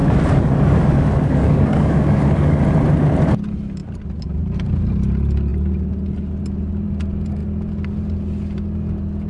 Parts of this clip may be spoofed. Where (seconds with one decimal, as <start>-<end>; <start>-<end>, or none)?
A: 0.0-2.6